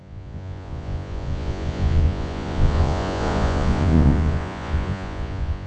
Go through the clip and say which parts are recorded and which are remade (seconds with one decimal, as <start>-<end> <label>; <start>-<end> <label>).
0.0-5.7 remade